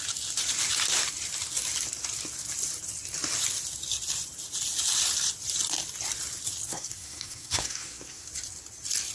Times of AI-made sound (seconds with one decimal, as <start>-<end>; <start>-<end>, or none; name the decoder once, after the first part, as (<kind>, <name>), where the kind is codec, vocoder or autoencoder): 6.7-8.3 (codec, SNAC)